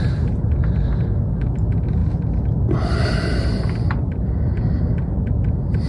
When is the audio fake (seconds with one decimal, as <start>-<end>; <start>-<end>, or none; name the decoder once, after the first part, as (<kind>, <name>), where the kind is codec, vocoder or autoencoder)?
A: none